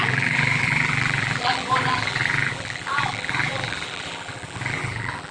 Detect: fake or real fake